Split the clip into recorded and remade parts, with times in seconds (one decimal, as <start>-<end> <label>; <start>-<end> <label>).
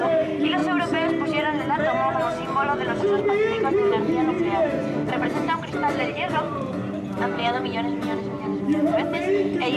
0.0-0.6 remade; 0.6-5.1 recorded; 5.1-9.8 remade